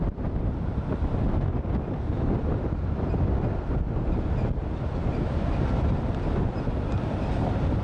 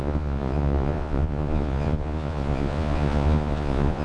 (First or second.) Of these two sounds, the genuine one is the first